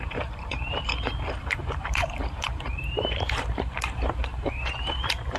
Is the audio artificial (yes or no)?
yes